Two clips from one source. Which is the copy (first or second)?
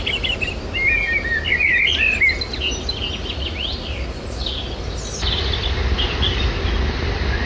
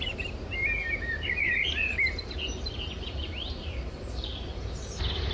second